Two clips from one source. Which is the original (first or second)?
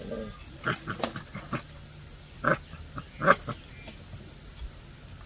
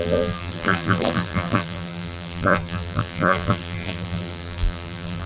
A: first